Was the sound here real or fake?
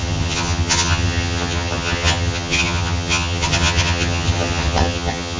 fake